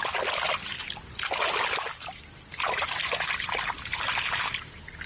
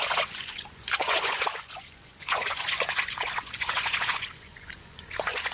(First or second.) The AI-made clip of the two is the second